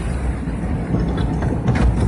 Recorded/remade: remade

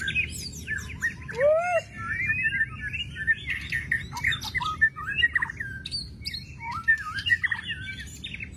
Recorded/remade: recorded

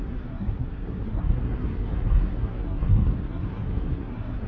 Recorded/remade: remade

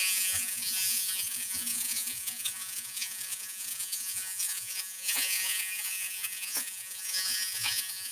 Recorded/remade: remade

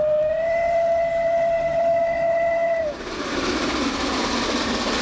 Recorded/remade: recorded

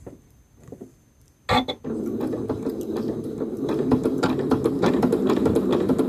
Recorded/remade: recorded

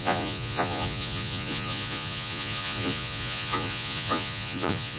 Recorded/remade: remade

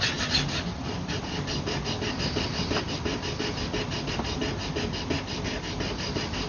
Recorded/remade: recorded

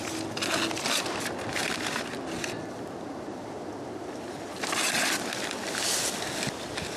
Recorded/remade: recorded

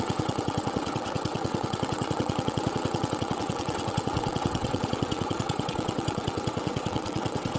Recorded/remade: remade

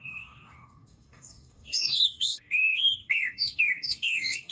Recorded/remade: remade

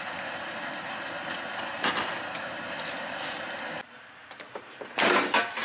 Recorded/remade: recorded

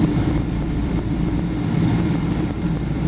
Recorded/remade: remade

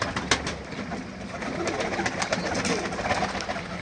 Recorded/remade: recorded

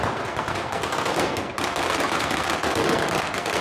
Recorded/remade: remade